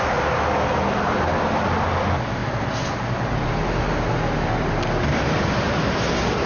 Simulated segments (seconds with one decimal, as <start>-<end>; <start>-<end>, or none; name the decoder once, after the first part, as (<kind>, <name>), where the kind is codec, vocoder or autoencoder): none